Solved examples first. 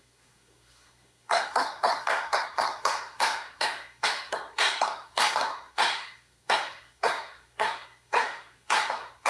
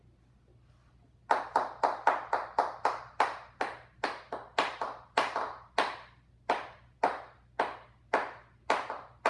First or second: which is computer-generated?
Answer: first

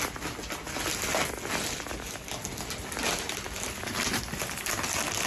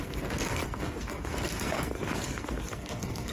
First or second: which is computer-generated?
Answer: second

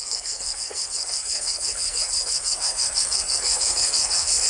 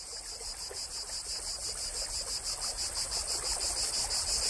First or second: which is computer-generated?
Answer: first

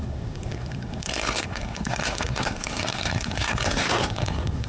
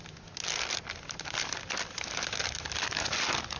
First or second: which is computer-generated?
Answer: first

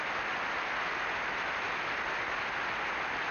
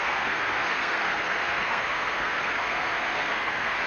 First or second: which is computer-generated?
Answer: second